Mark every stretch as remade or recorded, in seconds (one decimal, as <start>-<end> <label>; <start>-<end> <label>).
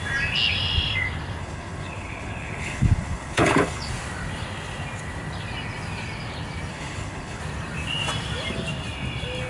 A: 0.0-1.4 recorded; 1.4-3.9 remade; 3.9-6.7 recorded; 6.7-7.4 remade; 7.4-9.5 recorded